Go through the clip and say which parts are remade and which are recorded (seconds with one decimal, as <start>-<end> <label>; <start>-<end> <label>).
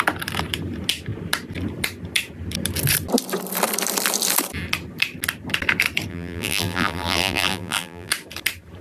0.0-6.1 recorded; 6.1-8.1 remade; 8.1-8.8 recorded